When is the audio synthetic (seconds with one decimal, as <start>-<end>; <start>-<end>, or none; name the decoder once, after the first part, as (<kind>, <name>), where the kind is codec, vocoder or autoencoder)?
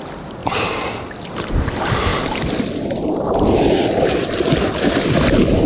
none